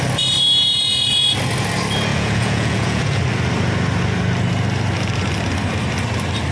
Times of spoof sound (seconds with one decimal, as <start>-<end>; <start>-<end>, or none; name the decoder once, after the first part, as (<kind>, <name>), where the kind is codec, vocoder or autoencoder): 2.1-3.2 (vocoder, Vocos)